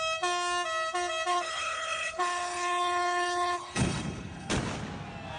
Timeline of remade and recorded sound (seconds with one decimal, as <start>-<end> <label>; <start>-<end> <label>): 0.0-1.3 recorded; 1.3-4.5 remade; 4.5-5.4 recorded